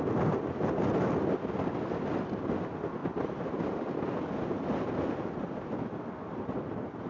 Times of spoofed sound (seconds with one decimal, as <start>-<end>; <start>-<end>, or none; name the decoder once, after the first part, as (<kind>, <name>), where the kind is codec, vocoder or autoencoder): 3.0-5.2 (vocoder, BigVGAN v2)